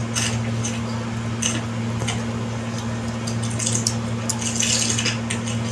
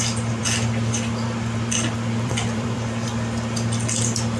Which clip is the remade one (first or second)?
second